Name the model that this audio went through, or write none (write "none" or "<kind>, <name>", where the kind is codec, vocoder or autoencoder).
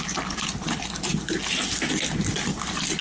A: none